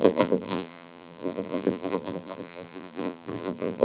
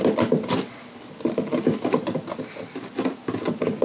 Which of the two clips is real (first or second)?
second